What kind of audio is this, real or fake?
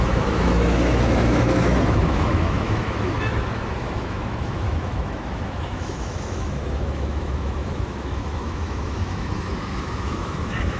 fake